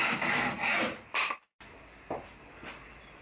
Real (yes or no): yes